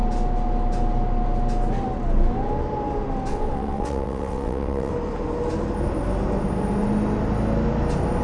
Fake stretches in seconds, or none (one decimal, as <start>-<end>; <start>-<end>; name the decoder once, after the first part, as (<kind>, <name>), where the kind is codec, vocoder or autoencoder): 3.3-4.9 (vocoder, WaveNeXt)